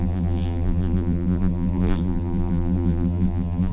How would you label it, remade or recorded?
remade